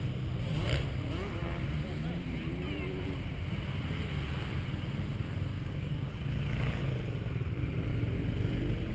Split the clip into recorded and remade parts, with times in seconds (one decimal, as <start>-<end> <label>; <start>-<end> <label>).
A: 0.0-5.5 recorded; 5.5-6.1 remade; 6.1-8.9 recorded